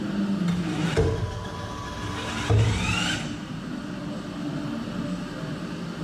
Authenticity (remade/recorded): recorded